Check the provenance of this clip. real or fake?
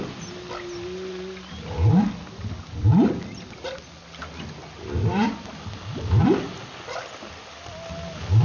real